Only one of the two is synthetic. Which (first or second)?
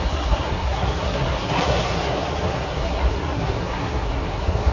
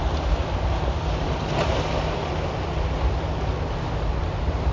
first